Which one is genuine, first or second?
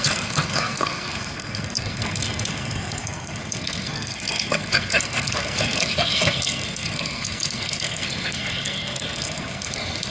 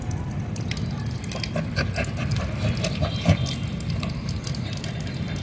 second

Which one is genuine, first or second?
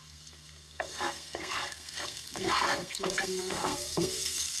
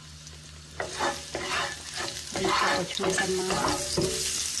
second